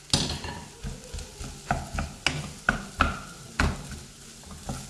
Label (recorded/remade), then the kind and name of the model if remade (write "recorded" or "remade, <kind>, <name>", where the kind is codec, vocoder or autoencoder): recorded